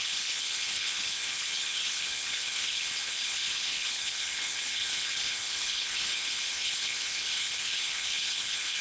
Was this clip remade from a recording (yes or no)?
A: yes